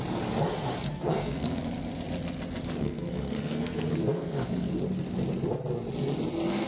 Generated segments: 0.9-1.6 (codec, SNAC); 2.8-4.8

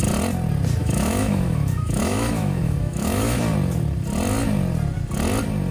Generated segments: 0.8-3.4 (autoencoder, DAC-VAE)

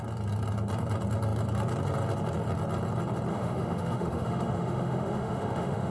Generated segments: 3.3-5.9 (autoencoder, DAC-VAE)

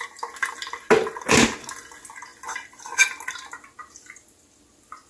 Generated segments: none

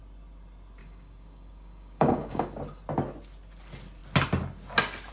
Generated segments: 0.8-2.5 (codec, DAC)